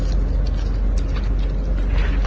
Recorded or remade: recorded